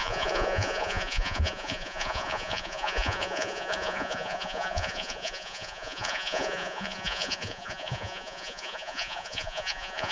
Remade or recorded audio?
remade